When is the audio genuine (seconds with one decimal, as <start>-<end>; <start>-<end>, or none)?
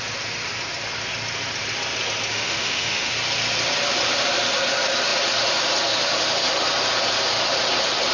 0.0-2.3; 3.1-8.1